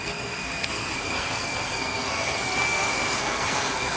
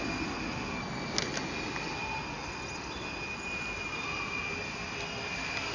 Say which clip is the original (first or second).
second